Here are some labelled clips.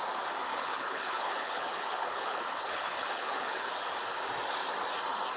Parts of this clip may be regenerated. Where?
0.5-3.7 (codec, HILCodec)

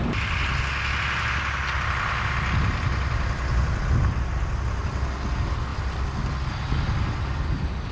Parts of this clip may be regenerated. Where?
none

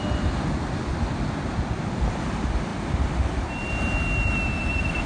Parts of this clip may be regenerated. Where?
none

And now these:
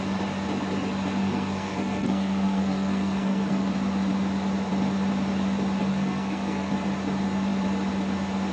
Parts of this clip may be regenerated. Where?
1.2-3.7 (codec, SNAC); 5.9-6.7

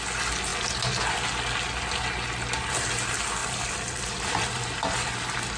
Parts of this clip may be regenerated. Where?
3.4-5.1 (vocoder, BigVGAN v2)

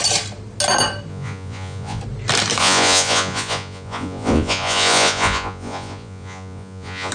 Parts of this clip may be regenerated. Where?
1.1-2.0 (vocoder, Vocos); 2.6-7.1

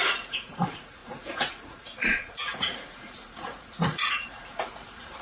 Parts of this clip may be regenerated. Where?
0.0-5.2 (vocoder, Vocos)

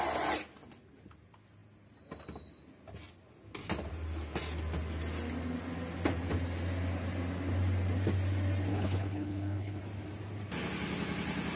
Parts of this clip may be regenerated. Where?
8.7-9.8 (codec, HILCodec)